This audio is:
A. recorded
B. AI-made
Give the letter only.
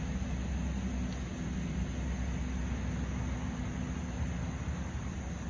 A